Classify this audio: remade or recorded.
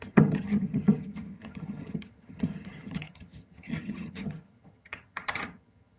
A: remade